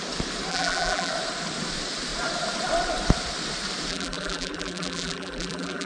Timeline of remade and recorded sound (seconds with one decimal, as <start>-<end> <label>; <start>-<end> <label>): 0.0-0.5 recorded; 0.5-1.1 remade; 1.1-3.9 recorded; 3.9-5.9 remade